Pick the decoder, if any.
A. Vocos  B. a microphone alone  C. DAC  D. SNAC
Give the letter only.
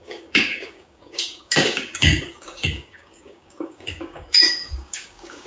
C